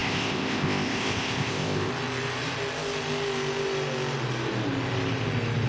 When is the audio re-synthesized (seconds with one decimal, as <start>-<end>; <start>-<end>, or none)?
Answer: 0.0-1.9